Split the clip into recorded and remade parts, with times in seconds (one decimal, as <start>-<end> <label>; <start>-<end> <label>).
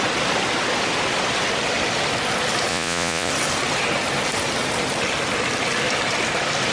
0.0-2.7 recorded; 2.7-3.3 remade; 3.3-6.7 recorded